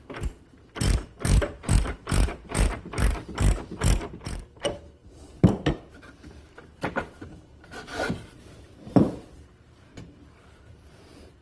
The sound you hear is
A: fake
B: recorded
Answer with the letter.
A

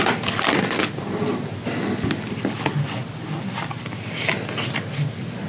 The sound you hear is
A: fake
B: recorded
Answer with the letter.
B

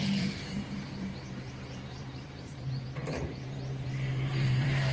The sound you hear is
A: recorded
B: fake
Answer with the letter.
B